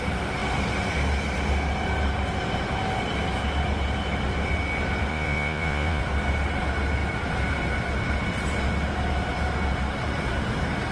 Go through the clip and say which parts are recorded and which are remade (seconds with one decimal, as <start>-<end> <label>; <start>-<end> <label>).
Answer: 0.0-5.1 recorded; 5.1-6.0 remade; 6.0-10.9 recorded